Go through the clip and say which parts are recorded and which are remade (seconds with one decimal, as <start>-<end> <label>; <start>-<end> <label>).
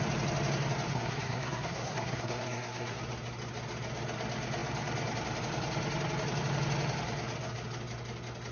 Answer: 0.0-0.9 recorded; 0.9-3.0 remade; 3.0-8.5 recorded